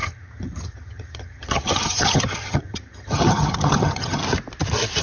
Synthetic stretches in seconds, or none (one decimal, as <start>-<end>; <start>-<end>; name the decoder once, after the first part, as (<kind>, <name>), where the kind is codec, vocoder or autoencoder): 0.0-4.2 (vocoder, HiFi-GAN)